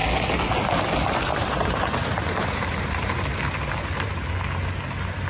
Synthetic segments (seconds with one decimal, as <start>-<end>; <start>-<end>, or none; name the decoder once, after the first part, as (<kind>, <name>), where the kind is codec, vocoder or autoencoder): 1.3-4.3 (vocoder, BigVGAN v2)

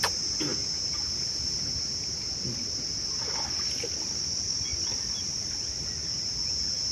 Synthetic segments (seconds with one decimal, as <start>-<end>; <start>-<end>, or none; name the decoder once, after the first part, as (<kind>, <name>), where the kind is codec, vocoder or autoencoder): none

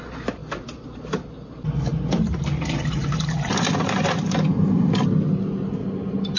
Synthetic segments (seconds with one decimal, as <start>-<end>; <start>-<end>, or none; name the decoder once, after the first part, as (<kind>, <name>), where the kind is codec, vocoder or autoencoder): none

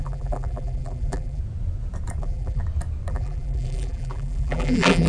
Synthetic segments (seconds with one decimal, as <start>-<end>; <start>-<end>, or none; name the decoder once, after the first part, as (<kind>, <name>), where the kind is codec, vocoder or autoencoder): 0.0-1.4 (vocoder, BigVGAN v2); 2.2-2.6; 3.1-5.1

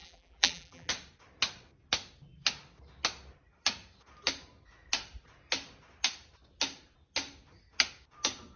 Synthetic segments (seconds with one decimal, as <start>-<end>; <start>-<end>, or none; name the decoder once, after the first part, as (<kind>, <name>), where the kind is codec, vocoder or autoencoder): 0.0-0.9 (vocoder, BigVGAN v2)

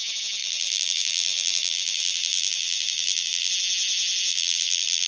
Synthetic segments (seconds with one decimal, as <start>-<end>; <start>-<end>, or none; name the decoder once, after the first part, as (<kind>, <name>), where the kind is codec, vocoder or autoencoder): 0.4-3.5 (vocoder, BigVGAN v2); 4.3-5.1

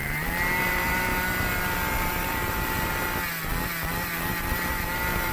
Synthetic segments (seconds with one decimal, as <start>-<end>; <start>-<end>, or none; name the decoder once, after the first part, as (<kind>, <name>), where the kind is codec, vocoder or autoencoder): 0.0-1.1 (vocoder, BigVGAN v2); 1.7-3.0; 4.7-5.3

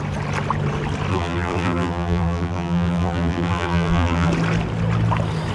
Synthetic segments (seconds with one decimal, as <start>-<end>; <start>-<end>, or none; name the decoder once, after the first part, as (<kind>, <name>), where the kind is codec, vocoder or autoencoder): 1.1-4.3 (vocoder, BigVGAN v2)